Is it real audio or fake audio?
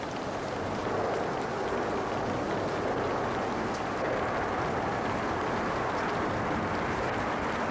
real